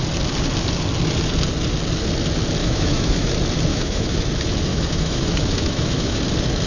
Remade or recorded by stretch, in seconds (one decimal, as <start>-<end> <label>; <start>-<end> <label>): 0.0-2.6 recorded; 2.6-3.3 remade; 3.3-3.7 recorded; 3.7-4.2 remade; 4.2-4.7 recorded; 4.7-6.2 remade; 6.2-6.7 recorded

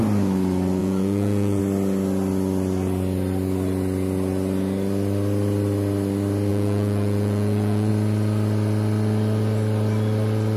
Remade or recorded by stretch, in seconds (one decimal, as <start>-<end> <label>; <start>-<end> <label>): 0.0-0.8 recorded; 0.8-1.6 remade; 1.6-6.5 recorded; 6.5-7.9 remade; 7.9-10.6 recorded

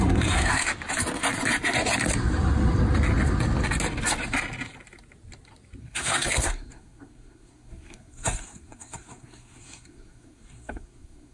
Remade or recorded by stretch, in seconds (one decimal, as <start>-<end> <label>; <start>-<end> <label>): 0.0-0.7 remade; 0.7-5.8 recorded; 5.8-11.3 remade

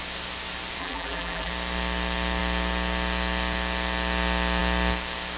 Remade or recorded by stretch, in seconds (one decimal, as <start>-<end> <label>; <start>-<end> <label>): 0.0-0.8 recorded; 0.8-1.5 remade; 1.5-5.4 recorded

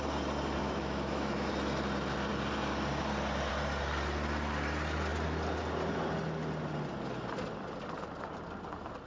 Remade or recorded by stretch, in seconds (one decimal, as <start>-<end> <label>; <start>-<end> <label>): 0.0-0.6 recorded; 0.6-1.5 remade; 1.5-9.1 recorded